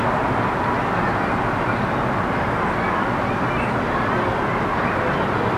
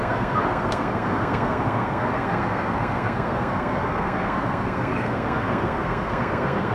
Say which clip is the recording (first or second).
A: first